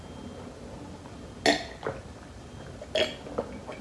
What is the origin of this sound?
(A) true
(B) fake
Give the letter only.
A